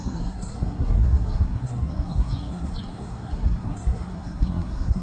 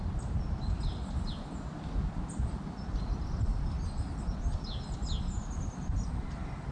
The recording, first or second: second